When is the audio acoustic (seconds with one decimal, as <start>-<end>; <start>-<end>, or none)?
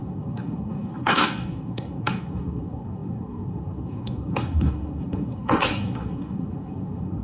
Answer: none